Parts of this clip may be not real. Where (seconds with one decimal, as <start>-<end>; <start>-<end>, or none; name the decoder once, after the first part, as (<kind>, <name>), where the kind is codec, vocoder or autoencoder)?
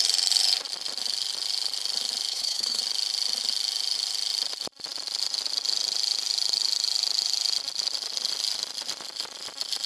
2.3-2.8 (codec, SNAC)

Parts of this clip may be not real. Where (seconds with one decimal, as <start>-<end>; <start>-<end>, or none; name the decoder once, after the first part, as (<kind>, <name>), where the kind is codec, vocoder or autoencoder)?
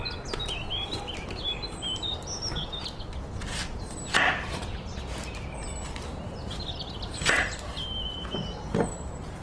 none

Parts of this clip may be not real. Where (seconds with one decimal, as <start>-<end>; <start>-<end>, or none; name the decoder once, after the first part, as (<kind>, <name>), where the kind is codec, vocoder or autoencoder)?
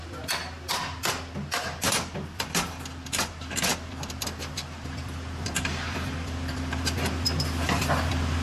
none